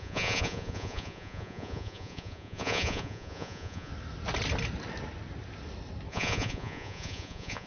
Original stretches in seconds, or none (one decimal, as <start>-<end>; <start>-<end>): 3.9-6.1